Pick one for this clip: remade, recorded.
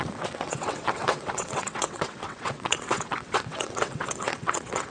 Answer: remade